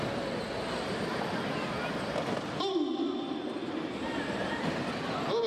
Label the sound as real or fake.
real